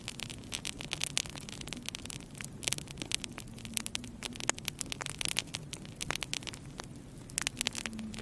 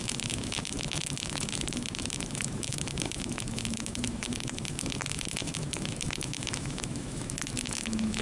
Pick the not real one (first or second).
second